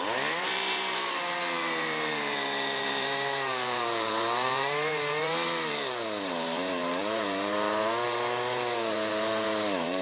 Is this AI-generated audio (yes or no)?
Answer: yes